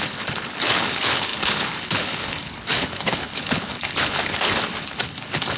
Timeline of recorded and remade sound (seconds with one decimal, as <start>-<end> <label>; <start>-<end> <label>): 0.0-5.6 remade